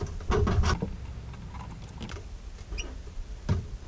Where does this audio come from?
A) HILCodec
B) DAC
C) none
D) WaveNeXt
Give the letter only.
C